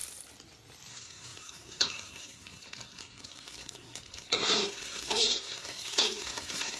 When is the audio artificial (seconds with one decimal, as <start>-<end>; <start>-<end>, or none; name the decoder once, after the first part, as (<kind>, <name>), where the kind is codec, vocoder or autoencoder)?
0.9-6.8 (codec, SNAC)